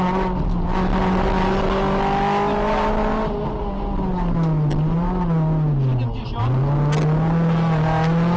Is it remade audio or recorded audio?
recorded